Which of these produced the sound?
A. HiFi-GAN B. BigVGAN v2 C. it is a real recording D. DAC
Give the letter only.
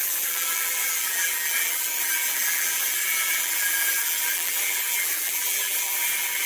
B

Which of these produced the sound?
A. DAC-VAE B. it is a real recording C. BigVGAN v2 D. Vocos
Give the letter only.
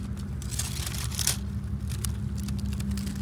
B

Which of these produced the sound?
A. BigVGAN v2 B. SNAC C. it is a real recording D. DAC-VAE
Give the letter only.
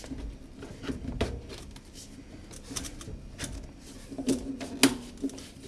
C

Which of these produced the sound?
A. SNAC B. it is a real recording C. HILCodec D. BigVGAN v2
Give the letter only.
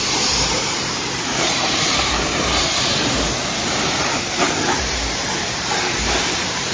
D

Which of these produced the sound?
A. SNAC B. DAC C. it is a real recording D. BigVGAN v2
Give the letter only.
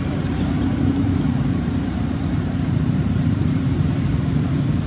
D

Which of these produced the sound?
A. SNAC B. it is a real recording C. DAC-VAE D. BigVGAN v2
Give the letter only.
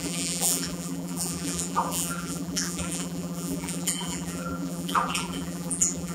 D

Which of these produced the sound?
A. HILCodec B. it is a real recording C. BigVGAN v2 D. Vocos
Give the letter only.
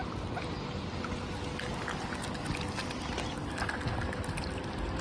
B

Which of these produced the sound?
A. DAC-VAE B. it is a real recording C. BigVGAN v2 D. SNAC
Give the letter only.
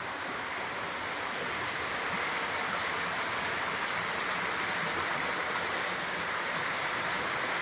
B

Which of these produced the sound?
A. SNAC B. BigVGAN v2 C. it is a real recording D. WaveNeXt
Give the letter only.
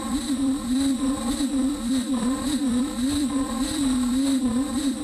B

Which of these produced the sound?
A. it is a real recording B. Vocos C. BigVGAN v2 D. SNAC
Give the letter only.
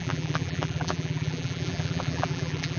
C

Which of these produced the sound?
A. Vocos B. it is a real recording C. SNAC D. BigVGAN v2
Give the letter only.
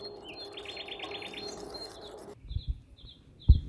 B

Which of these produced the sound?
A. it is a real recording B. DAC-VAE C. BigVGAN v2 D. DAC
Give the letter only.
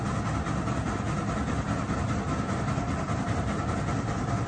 A